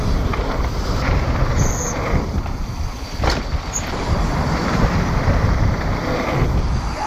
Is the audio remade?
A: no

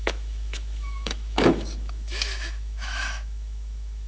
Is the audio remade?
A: yes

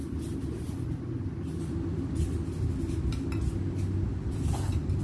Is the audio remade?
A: no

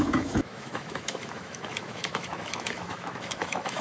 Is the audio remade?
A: yes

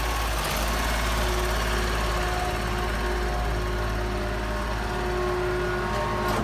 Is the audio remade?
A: no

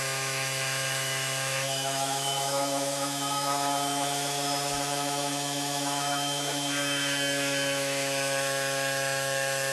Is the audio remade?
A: yes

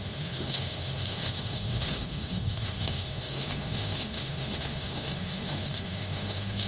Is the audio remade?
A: yes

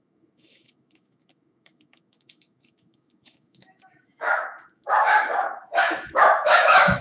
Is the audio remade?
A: yes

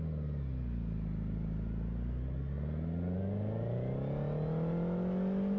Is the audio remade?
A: no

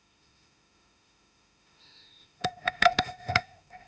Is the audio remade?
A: yes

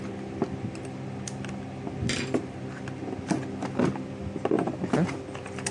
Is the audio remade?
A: no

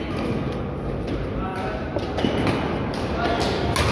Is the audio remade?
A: no